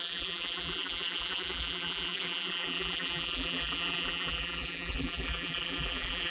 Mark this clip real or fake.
fake